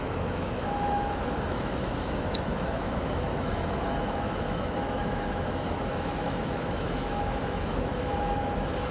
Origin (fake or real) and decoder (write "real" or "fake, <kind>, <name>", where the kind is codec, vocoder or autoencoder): fake, autoencoder, DAC-VAE